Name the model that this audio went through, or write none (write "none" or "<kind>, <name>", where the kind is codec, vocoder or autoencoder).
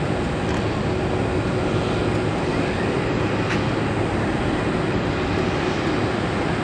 none